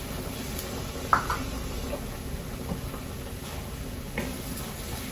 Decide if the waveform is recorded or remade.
recorded